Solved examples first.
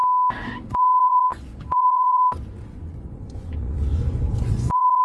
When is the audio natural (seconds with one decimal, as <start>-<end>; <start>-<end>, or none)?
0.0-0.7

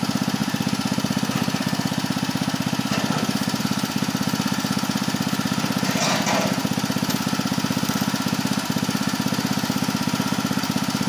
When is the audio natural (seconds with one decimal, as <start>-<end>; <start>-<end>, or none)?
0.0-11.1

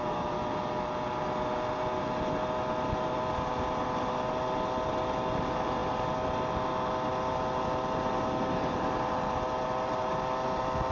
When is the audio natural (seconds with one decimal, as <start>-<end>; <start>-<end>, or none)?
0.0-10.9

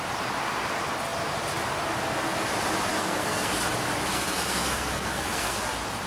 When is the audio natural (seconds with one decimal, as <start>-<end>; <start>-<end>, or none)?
0.0-2.9; 3.5-4.1; 5.6-6.1

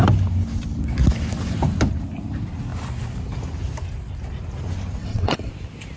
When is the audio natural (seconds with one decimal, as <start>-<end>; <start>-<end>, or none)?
0.0-5.0; 5.5-6.0